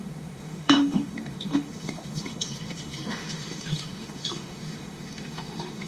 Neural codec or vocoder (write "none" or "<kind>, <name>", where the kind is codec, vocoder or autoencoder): autoencoder, DAC-VAE